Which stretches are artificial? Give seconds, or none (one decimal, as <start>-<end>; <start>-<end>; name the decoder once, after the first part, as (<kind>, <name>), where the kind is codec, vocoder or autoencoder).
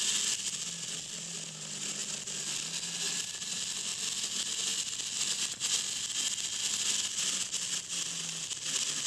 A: none